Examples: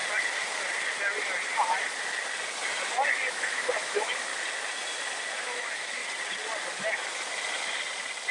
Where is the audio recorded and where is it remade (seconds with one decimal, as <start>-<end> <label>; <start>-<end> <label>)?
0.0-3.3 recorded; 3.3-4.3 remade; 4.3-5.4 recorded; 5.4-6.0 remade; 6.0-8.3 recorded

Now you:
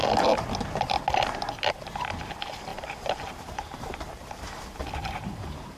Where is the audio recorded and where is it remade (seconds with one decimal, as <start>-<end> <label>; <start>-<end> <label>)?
0.0-2.7 recorded; 2.7-4.6 remade; 4.6-5.0 recorded; 5.0-5.8 remade

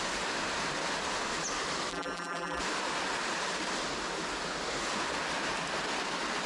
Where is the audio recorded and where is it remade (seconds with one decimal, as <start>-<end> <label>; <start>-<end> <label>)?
0.0-1.9 recorded; 1.9-2.6 remade; 2.6-6.5 recorded

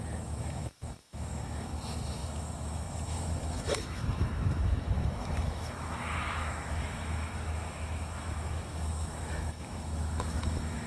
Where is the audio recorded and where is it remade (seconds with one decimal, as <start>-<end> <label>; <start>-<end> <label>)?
0.0-10.9 remade

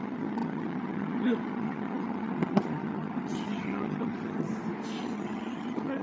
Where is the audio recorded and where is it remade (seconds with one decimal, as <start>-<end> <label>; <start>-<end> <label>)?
0.0-4.5 remade; 4.5-5.0 recorded; 5.0-6.0 remade

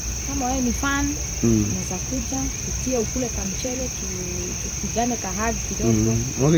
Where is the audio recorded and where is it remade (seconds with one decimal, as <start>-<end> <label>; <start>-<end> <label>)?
0.0-2.0 recorded; 2.0-3.8 remade; 3.8-6.6 recorded

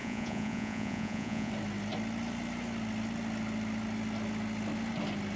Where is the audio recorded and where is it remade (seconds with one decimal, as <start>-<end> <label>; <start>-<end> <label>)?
0.0-1.5 remade; 1.5-5.4 recorded